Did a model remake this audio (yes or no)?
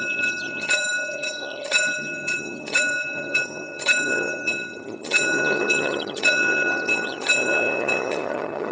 yes